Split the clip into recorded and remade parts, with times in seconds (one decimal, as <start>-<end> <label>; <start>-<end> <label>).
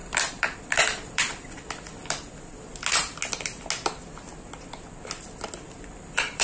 0.0-2.7 remade; 2.7-5.9 recorded; 5.9-6.4 remade